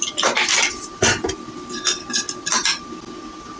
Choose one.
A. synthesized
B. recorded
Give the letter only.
B